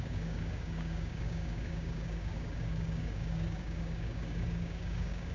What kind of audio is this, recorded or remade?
remade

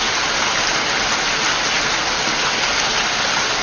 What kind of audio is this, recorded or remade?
recorded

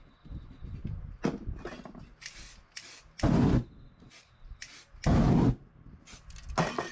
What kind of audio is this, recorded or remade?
recorded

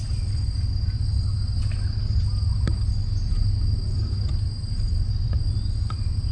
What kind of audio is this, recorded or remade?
recorded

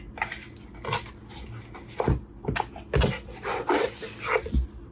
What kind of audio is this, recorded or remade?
recorded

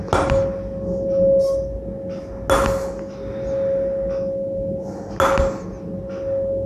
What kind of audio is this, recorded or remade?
recorded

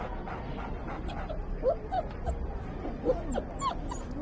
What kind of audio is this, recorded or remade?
recorded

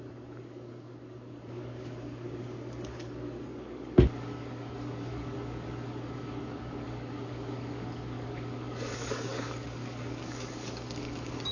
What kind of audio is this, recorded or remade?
remade